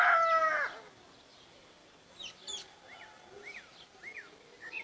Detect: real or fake real